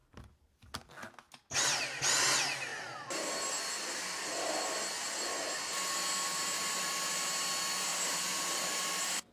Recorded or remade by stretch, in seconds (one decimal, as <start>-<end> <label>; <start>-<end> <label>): 0.0-7.9 recorded; 7.9-9.3 remade

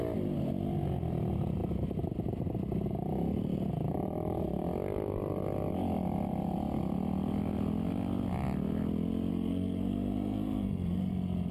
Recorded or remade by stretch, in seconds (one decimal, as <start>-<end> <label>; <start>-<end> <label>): 0.0-9.3 recorded; 9.3-11.1 remade; 11.1-11.5 recorded

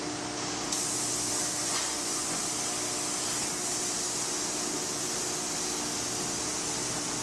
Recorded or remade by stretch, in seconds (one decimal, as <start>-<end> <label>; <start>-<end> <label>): 0.0-1.6 recorded; 1.6-2.4 remade; 2.4-7.2 recorded

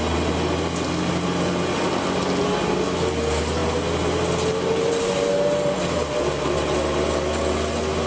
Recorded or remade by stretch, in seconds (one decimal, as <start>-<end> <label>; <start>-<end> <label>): 0.0-8.1 recorded

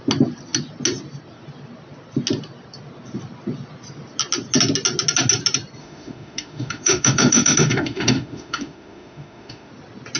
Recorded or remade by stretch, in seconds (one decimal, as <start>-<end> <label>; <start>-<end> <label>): 0.0-5.8 recorded; 5.8-9.7 remade; 9.7-10.2 recorded

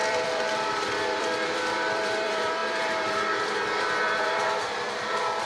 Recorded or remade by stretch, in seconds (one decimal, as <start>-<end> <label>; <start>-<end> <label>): 0.0-5.5 remade

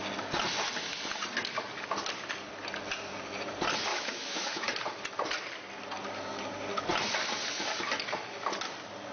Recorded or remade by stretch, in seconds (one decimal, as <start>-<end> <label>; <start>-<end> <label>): 0.0-3.9 recorded; 3.9-4.8 remade; 4.8-9.1 recorded